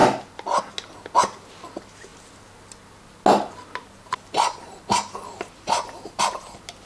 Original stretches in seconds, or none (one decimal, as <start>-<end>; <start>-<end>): 0.0-6.9